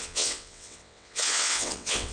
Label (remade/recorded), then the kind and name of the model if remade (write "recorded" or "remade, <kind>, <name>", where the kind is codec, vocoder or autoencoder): remade, vocoder, WaveNeXt